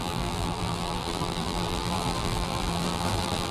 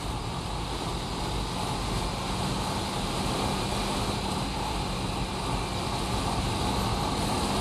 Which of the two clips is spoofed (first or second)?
first